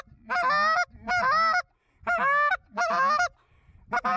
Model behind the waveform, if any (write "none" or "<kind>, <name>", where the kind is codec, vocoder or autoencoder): none